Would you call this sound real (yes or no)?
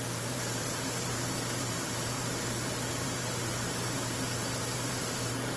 no